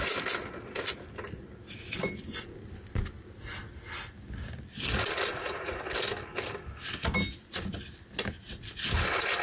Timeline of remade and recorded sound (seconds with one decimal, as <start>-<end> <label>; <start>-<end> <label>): 0.0-5.3 recorded; 5.3-5.9 remade; 5.9-9.4 recorded